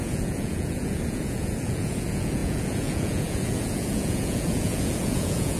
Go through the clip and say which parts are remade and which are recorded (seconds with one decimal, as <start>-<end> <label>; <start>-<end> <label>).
0.0-5.6 remade